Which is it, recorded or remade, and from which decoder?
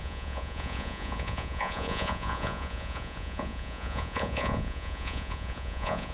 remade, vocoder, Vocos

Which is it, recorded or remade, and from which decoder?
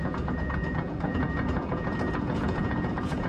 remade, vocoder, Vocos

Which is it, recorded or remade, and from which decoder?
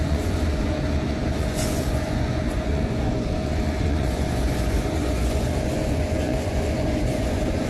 remade, vocoder, Vocos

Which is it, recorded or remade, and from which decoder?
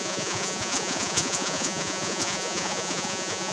remade, vocoder, Vocos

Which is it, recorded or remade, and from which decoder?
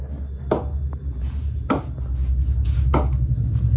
recorded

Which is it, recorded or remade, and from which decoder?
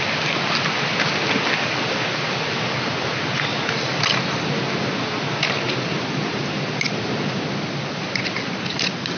recorded